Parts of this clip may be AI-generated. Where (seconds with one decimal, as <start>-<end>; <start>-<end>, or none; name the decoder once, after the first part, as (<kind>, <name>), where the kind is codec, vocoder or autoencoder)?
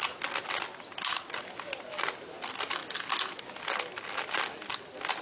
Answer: none